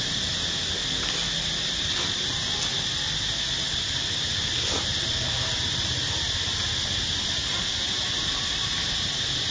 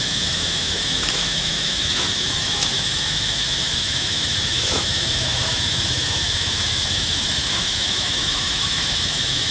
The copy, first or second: second